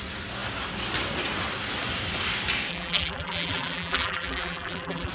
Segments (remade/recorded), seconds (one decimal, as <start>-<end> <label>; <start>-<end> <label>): 0.0-2.7 recorded; 2.7-5.1 remade